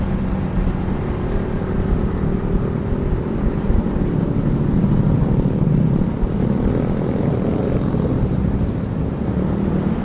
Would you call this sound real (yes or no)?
yes